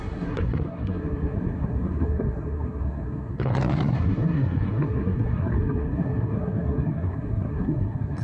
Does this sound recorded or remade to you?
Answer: remade